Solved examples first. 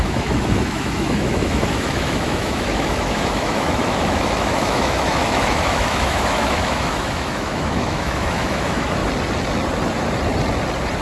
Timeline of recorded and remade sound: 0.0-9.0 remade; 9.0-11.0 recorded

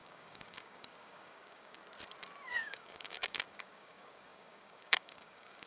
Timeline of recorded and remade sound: 0.0-1.8 remade; 1.8-2.5 recorded; 2.5-5.7 remade